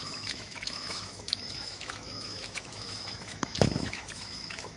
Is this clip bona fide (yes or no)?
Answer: no